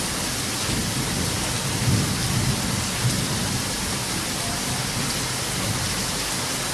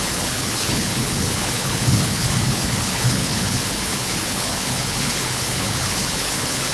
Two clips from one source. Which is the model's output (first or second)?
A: second